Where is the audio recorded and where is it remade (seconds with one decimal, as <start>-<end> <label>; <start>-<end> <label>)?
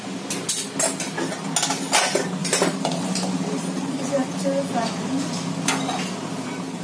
0.0-2.4 recorded; 2.4-5.7 remade; 5.7-6.8 recorded